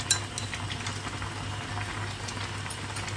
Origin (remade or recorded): recorded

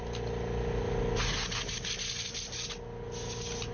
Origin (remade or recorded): recorded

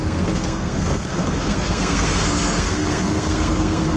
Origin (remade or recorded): remade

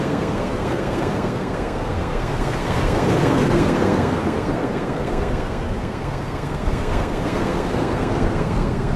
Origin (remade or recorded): remade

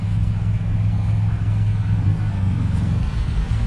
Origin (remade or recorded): remade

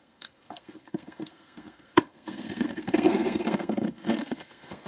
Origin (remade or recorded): remade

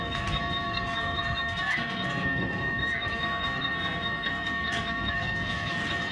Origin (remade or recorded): remade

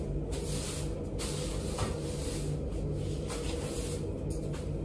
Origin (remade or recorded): recorded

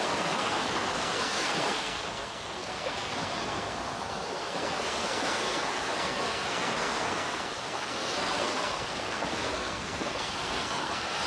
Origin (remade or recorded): remade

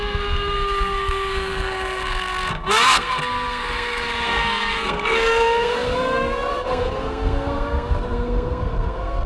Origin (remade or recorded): remade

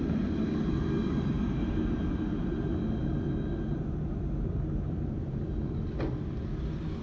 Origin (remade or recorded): recorded